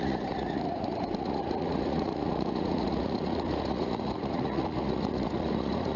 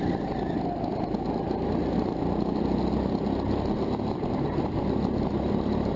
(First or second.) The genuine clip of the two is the second